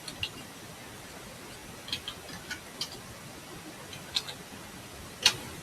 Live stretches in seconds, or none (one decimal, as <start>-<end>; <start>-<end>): 0.0-5.6